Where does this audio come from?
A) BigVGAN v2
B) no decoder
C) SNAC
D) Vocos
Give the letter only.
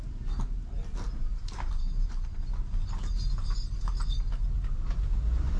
B